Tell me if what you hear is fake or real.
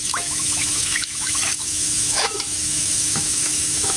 fake